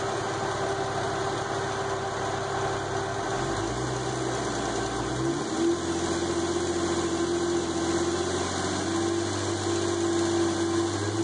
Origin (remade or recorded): recorded